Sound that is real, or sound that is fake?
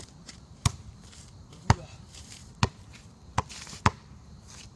fake